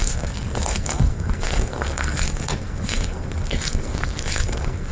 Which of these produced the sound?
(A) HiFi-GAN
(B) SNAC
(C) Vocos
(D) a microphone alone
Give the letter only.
B